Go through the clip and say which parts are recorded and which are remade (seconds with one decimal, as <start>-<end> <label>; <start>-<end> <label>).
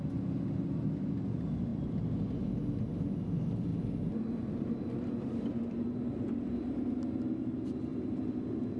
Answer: 0.0-3.7 recorded; 3.7-6.2 remade; 6.2-7.9 recorded; 7.9-8.8 remade